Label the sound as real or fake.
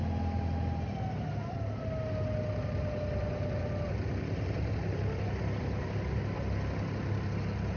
real